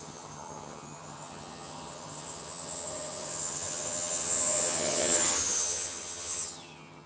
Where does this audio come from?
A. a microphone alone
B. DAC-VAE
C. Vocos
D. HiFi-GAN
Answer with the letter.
D